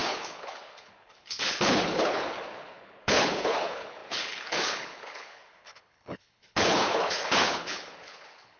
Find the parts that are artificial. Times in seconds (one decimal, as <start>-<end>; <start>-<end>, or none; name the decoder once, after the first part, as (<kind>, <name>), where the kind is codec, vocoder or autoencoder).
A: 0.0-8.6 (codec, HILCodec)